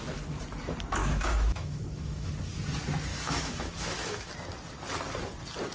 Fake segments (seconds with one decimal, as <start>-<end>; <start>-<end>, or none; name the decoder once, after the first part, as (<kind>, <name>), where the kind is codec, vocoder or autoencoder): 1.0-2.3 (autoencoder, DAC-VAE); 3.1-4.3